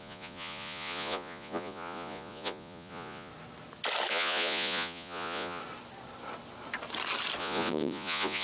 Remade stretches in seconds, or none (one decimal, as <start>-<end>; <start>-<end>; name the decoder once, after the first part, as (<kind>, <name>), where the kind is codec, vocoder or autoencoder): 0.0-3.3 (vocoder, Vocos); 4.1-5.6; 7.4-8.4

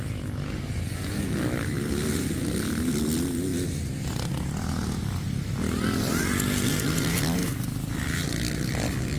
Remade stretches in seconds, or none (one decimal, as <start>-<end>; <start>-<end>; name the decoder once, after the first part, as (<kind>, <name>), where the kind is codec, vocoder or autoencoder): none

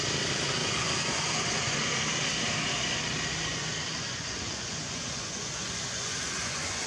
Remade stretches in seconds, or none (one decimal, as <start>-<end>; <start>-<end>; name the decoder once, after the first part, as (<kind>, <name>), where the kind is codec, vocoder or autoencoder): 0.6-1.8 (vocoder, Vocos); 3.5-6.9

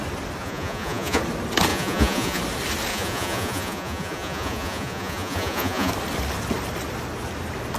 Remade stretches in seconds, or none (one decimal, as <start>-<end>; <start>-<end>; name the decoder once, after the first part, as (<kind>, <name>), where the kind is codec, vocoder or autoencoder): 0.4-1.2 (vocoder, Vocos); 1.7-2.4; 2.9-5.9

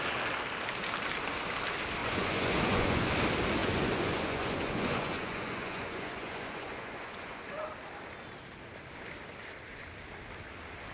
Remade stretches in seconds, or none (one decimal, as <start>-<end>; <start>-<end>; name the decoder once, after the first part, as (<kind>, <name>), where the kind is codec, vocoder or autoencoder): 2.0-3.1 (vocoder, Vocos); 3.6-7.4